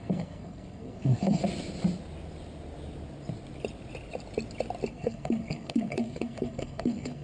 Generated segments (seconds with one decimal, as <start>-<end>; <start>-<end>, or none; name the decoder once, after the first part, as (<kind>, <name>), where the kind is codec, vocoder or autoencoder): 0.0-1.4 (codec, SNAC); 4.9-7.2